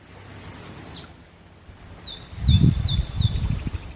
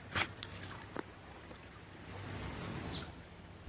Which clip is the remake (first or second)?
first